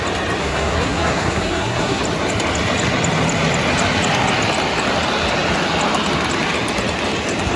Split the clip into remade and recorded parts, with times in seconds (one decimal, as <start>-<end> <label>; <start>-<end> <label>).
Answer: 0.0-0.4 recorded; 0.4-2.0 remade; 2.0-7.6 recorded